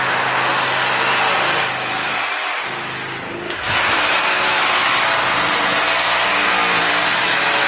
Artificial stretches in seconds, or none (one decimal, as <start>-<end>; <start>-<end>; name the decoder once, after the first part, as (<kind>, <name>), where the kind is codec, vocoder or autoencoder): 4.2-4.9 (autoencoder, DAC-VAE)